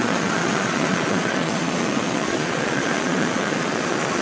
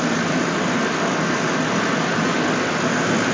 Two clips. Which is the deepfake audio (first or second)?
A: first